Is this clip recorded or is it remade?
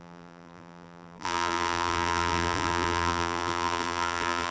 remade